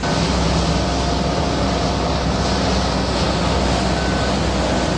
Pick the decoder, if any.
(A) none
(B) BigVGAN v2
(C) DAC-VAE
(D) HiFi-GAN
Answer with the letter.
A